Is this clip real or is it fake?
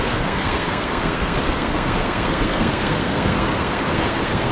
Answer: fake